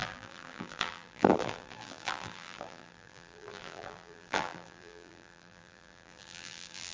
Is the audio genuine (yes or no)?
no